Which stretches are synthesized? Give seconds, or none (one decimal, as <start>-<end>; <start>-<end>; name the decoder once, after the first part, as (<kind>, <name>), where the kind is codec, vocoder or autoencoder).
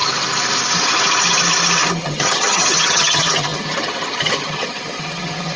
1.9-5.6 (vocoder, HiFi-GAN)